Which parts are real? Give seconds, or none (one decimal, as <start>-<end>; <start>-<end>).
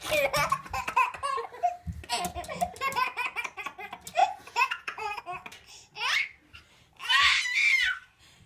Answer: 0.0-4.2; 5.2-8.5